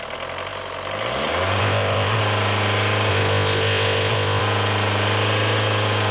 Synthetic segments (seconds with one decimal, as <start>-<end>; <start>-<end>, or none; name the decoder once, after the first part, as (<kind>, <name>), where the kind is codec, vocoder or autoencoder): 1.6-2.2 (codec, ZipCodec); 3.1-4.4